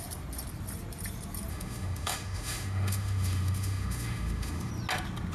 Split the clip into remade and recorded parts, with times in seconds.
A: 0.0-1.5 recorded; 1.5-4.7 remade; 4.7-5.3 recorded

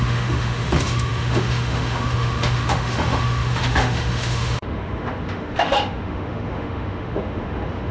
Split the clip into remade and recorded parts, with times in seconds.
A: 0.0-7.9 remade

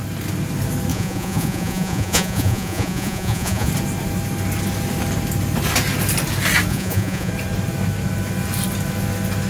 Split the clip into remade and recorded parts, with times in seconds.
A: 0.0-0.9 recorded; 0.9-3.7 remade; 3.7-6.7 recorded; 6.7-7.3 remade; 7.3-9.5 recorded